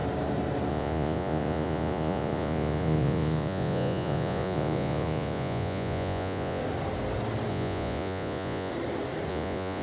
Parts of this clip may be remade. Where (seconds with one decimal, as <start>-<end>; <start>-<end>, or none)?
0.7-6.6; 7.5-8.7; 9.3-9.8